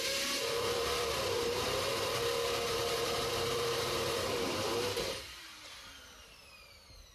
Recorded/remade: remade